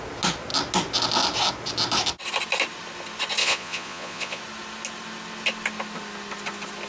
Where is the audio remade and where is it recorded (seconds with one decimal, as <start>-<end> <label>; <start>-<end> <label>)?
0.0-3.4 recorded; 3.4-4.4 remade; 4.4-6.9 recorded